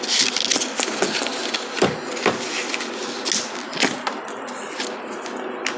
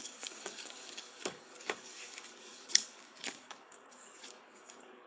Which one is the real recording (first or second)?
first